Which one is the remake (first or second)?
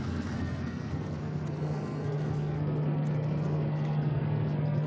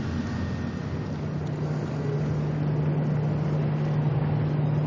first